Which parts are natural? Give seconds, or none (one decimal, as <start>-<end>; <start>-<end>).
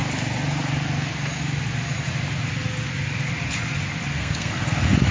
0.0-4.1; 4.6-5.1